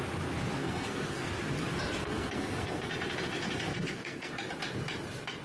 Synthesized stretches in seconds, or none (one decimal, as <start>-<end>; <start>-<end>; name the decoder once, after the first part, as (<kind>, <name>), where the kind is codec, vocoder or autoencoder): 0.6-1.3 (codec, SNAC); 2.0-2.9; 3.7-4.3